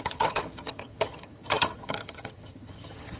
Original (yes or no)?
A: no